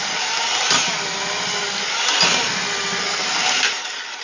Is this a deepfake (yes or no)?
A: no